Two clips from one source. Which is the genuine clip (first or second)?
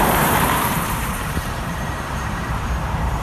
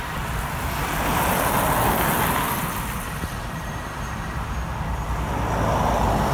second